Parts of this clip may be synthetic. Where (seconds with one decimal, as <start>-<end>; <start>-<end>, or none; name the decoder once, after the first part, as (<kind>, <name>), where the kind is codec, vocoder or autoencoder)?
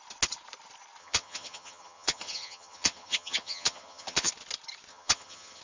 1.0-4.3 (vocoder, HiFi-GAN); 4.9-5.6